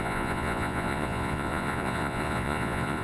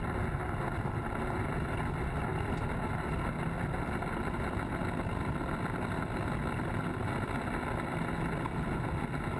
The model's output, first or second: first